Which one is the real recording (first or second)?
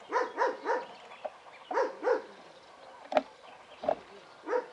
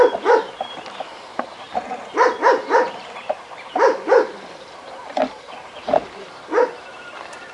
first